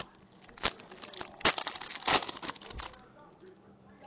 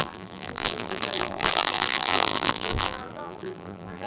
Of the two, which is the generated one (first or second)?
second